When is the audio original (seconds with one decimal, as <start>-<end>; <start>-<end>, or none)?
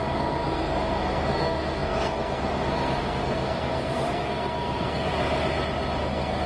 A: 5.1-6.0